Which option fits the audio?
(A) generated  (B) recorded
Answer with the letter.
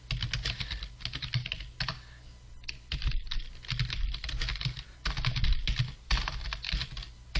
B